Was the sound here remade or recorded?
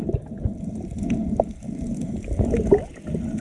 recorded